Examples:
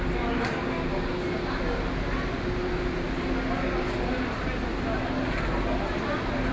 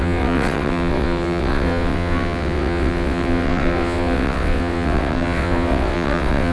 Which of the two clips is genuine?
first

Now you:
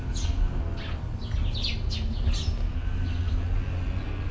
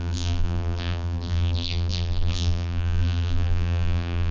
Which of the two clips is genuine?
first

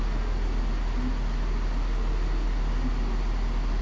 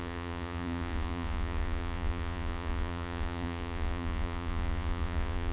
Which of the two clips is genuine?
first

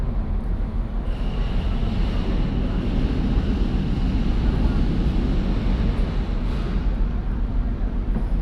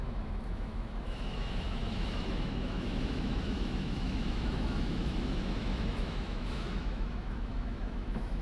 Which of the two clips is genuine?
first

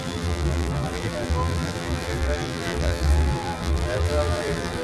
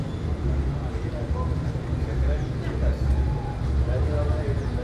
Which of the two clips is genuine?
second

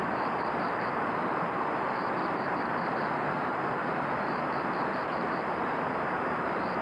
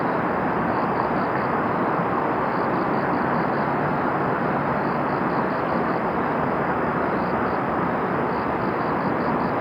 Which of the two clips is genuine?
second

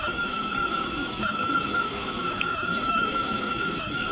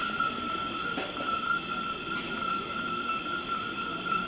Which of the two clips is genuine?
second